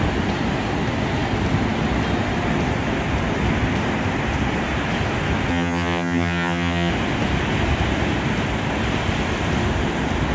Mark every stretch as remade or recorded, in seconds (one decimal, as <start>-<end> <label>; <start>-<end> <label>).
0.0-5.5 recorded; 5.5-6.9 remade; 6.9-10.3 recorded